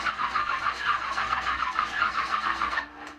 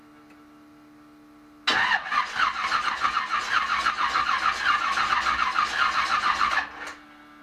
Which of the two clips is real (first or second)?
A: second